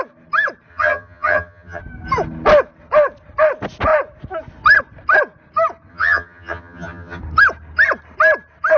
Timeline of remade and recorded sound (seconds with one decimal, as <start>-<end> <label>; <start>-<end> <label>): 0.0-0.7 recorded; 0.7-1.8 remade; 1.8-5.9 recorded; 5.9-7.2 remade; 7.2-8.8 recorded